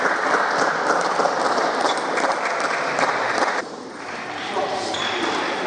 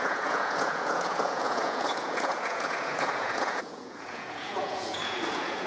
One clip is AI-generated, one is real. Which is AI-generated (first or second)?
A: second